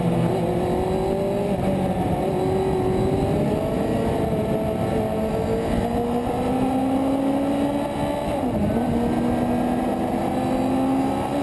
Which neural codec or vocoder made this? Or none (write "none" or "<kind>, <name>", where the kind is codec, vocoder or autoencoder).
none